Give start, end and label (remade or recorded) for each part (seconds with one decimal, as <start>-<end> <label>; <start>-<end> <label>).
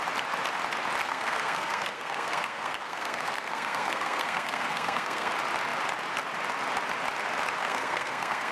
0.0-1.0 recorded; 1.0-5.3 remade; 5.3-7.6 recorded; 7.6-8.5 remade